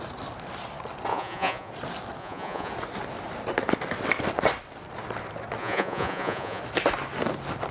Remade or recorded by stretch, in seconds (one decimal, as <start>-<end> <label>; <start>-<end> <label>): 0.0-1.1 recorded; 1.1-1.7 remade; 1.7-2.2 recorded; 2.2-2.7 remade; 2.7-5.6 recorded; 5.6-6.6 remade; 6.6-7.7 recorded